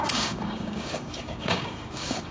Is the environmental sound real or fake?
fake